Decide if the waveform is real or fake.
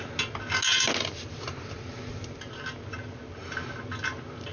real